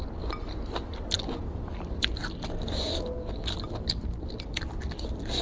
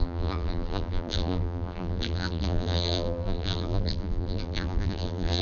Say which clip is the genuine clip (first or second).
first